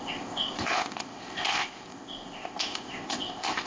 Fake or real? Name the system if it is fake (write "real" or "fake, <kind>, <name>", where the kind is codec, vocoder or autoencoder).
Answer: fake, codec, ZipCodec